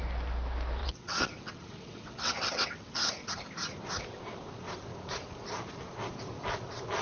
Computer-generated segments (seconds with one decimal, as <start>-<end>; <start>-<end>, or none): 0.8-3.1

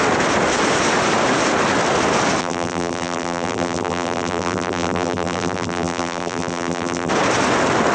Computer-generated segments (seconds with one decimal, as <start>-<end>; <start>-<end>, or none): 2.4-7.1

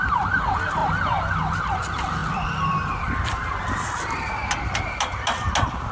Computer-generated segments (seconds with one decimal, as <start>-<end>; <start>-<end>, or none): none